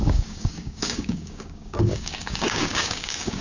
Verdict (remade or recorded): remade